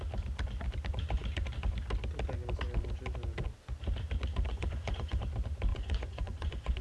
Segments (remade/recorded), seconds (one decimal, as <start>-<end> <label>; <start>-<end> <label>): 0.0-4.5 recorded; 4.5-5.2 remade; 5.2-5.7 recorded; 5.7-6.8 remade

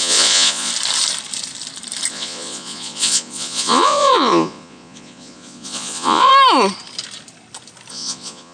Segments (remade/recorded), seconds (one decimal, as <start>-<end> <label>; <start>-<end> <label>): 0.0-0.7 remade; 0.7-2.1 recorded; 2.1-6.3 remade; 6.3-7.9 recorded; 7.9-8.5 remade

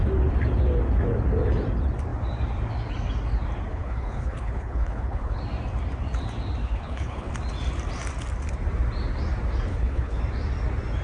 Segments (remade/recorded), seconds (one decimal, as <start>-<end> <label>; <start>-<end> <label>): 0.0-3.7 recorded; 3.7-5.4 remade; 5.4-6.6 recorded; 6.6-7.3 remade; 7.3-9.7 recorded; 9.7-10.2 remade; 10.2-11.0 recorded